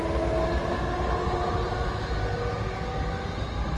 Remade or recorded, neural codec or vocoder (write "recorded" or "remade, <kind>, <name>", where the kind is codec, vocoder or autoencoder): recorded